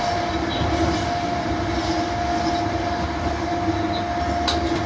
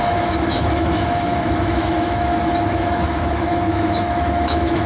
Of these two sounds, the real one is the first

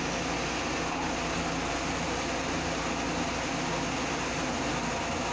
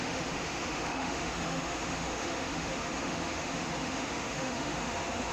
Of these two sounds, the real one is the first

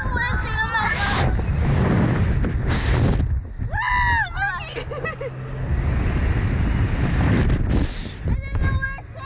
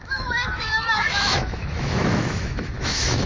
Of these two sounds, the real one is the first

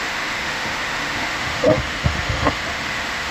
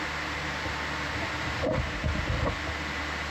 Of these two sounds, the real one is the second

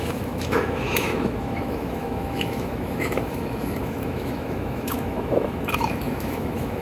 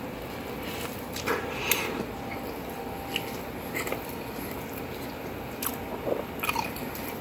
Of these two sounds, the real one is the second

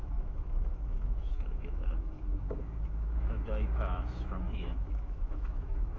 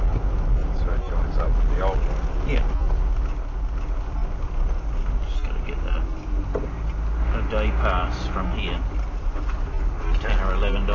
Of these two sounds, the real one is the second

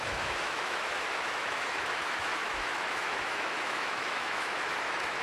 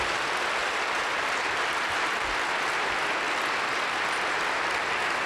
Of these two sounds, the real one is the second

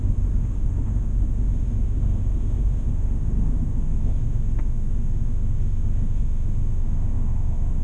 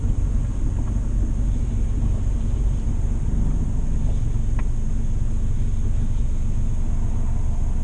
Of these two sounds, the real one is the second